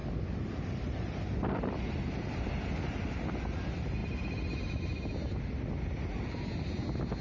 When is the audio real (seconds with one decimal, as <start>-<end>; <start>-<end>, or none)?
0.0-7.2